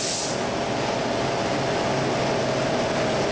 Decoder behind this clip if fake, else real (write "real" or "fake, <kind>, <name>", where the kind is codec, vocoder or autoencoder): real